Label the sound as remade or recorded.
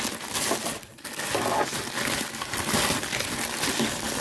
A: recorded